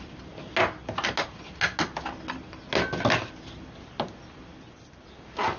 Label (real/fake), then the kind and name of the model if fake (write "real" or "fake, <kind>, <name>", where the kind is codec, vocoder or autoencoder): real